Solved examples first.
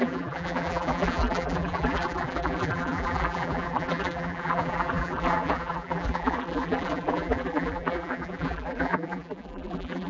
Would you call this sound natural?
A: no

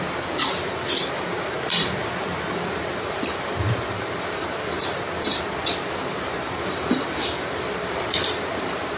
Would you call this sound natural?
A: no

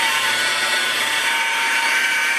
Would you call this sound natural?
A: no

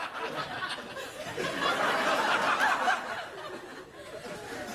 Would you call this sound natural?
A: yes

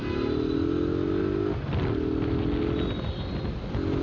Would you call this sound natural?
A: yes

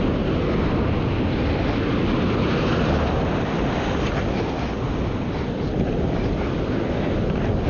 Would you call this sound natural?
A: yes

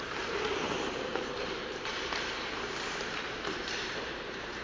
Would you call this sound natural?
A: no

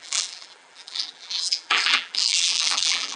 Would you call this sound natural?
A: no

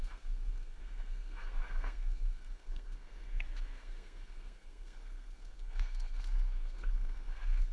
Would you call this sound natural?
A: no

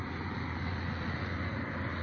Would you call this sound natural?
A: yes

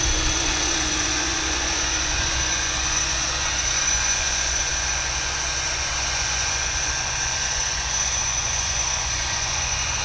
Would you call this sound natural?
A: no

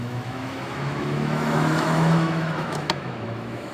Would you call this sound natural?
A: no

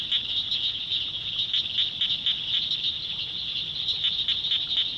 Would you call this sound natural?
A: yes